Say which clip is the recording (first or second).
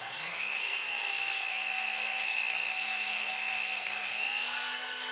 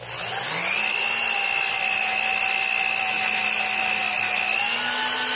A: second